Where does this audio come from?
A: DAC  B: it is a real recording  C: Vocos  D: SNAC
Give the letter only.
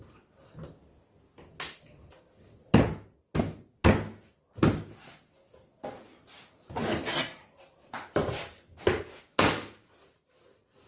B